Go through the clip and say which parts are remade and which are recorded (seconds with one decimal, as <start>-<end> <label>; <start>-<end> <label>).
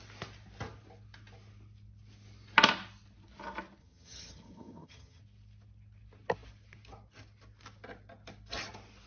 0.0-3.8 recorded; 3.8-5.2 remade; 5.2-9.1 recorded